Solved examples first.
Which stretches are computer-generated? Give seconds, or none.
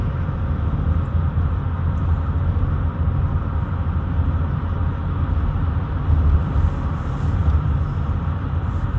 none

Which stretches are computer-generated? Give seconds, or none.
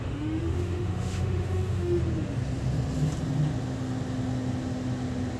0.0-2.0 (autoencoder, DAC-VAE)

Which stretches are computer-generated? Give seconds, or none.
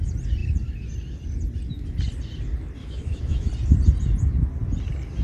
2.8-3.5 (autoencoder, DAC-VAE)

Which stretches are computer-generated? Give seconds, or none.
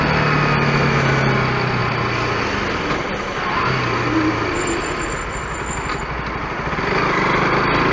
none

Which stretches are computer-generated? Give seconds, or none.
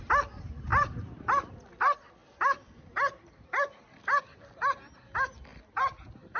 0.7-1.4 (vocoder, BigVGAN v2); 2.2-4.2